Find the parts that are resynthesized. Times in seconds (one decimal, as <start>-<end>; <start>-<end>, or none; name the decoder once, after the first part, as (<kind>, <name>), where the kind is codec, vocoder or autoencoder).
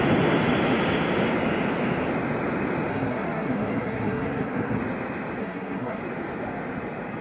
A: 2.9-4.8 (codec, SNAC); 5.4-6.0